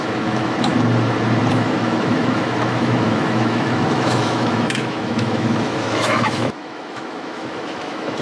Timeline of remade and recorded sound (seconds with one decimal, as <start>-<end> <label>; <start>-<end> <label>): 0.0-0.7 remade; 0.7-1.5 recorded; 1.5-8.2 remade